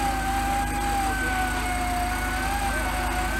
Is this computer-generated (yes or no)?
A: no